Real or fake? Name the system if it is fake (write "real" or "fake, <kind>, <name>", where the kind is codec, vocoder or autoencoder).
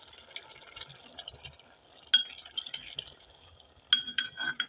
real